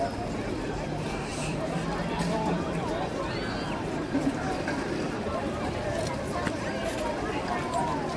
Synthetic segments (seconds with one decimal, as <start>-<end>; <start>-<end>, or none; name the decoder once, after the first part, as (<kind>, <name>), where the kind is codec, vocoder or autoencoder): 0.0-6.0 (vocoder, BigVGAN v2)